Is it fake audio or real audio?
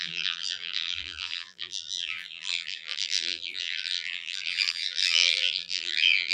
fake